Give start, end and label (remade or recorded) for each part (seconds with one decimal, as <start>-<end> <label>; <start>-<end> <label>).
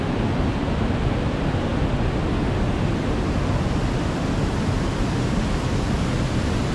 0.0-6.7 recorded